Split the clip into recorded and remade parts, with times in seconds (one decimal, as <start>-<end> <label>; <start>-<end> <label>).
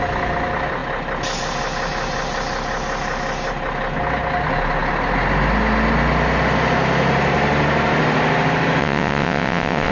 0.0-8.8 recorded; 8.8-9.9 remade